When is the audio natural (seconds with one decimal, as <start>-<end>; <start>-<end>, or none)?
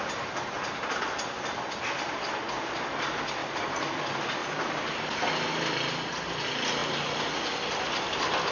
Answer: 0.0-3.4; 4.0-4.4; 4.9-8.5